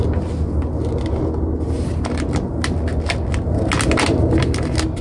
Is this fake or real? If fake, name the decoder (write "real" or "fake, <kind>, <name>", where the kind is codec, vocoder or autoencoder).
real